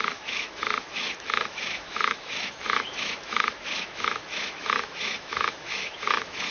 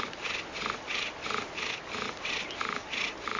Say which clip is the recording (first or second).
second